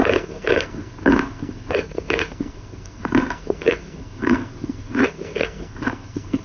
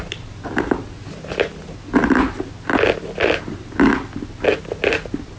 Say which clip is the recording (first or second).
second